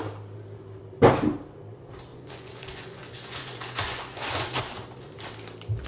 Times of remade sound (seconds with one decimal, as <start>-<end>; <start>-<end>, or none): 2.1-4.6